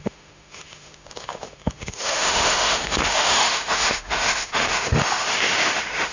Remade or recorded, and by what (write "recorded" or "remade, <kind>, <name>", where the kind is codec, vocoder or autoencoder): remade, autoencoder, DAC-VAE